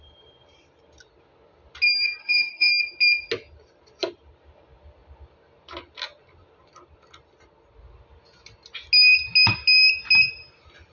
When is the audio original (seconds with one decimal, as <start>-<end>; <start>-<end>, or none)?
0.0-2.2; 2.7-10.9